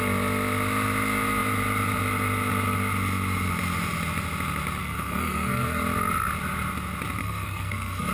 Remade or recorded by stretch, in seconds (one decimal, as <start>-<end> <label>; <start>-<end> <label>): 0.0-4.8 recorded; 4.8-5.8 remade; 5.8-7.2 recorded; 7.2-8.1 remade